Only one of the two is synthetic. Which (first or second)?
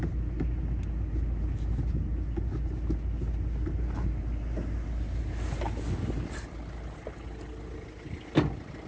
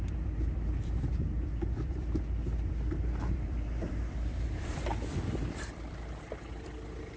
second